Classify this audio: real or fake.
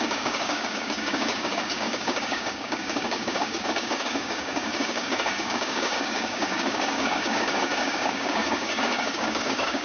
fake